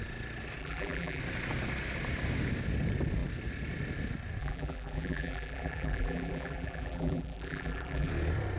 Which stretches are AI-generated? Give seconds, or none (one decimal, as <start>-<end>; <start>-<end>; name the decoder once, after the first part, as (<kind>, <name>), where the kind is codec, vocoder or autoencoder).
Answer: 0.6-1.2 (vocoder, BigVGAN v2); 4.4-8.1